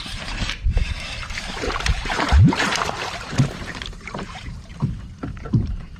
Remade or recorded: remade